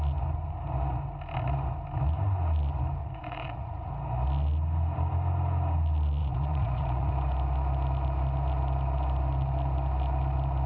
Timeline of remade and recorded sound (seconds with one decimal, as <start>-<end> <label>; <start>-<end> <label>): 0.0-3.0 recorded; 3.0-3.9 remade; 3.9-6.2 recorded; 6.2-7.1 remade; 7.1-10.7 recorded